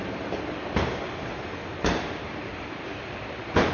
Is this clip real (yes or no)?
no